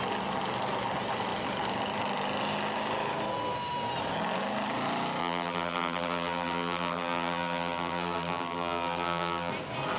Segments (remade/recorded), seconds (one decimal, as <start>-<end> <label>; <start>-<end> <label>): 0.0-5.2 recorded; 5.2-9.5 remade; 9.5-10.0 recorded